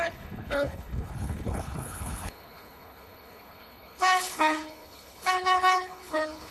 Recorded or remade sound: remade